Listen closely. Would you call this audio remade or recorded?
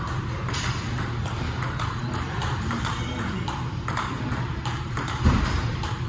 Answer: remade